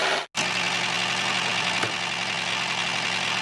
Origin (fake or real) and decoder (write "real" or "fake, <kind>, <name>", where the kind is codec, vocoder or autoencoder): real